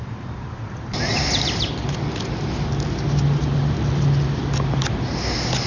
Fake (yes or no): no